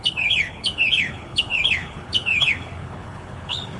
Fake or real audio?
fake